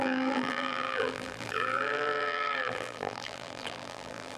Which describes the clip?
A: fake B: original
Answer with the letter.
A